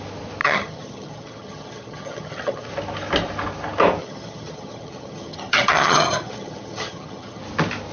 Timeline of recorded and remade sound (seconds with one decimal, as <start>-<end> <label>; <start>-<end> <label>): 0.0-0.4 recorded; 0.4-2.7 remade; 2.7-4.0 recorded; 4.0-7.4 remade; 7.4-7.9 recorded